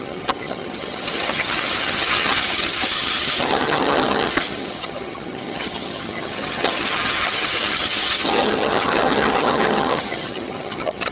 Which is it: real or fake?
fake